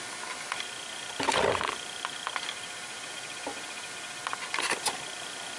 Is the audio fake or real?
real